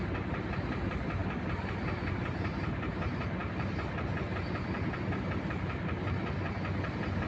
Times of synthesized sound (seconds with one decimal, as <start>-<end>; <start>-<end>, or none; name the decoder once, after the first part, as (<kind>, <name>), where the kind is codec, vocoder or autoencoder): none